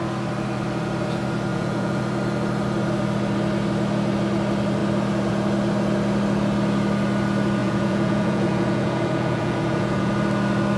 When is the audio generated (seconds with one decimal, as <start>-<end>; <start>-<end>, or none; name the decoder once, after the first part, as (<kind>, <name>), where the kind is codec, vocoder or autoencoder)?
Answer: 1.5-2.0 (vocoder, Vocos); 7.6-10.1